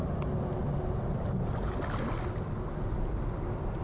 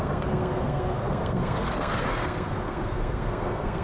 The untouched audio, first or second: first